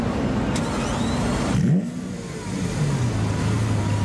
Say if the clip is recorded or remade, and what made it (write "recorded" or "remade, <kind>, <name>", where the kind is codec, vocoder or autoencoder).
recorded